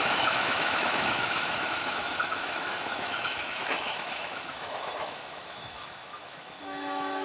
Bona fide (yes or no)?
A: no